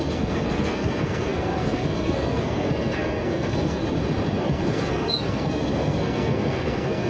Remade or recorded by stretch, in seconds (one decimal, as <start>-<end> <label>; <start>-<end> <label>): 0.0-3.8 remade; 3.8-4.4 recorded; 4.4-7.1 remade